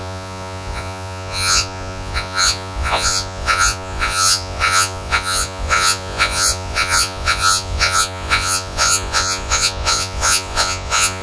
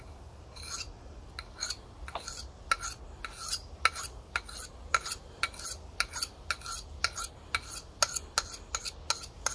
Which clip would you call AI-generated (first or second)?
first